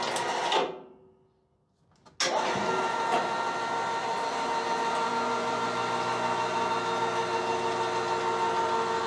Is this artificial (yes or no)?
no